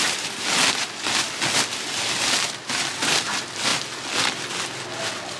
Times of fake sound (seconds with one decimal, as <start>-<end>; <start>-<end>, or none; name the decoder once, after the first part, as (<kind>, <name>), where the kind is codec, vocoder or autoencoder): none